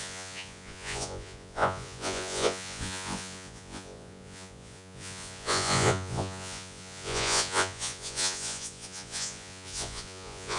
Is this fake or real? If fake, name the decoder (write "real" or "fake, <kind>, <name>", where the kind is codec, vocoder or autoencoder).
fake, vocoder, Vocos